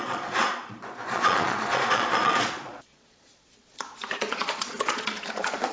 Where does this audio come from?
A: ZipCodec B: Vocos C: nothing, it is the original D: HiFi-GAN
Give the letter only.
B